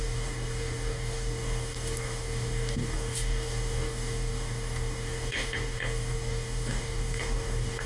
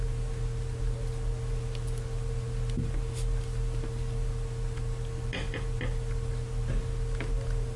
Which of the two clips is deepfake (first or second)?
first